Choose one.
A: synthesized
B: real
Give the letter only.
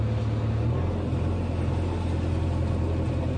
B